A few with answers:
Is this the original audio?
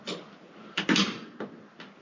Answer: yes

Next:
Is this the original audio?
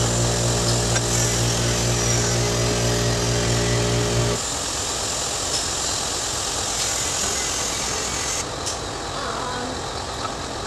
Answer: yes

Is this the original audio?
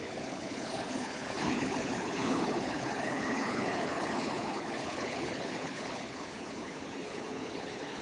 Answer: no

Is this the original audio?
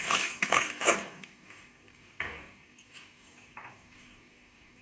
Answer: no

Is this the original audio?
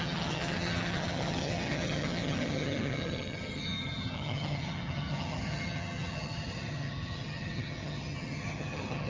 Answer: no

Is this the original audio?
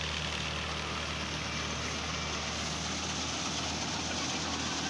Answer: yes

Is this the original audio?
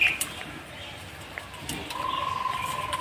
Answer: yes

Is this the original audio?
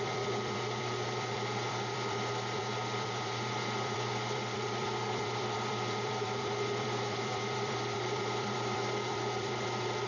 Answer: no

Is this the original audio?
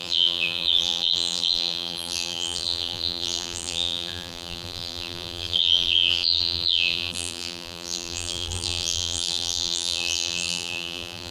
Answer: no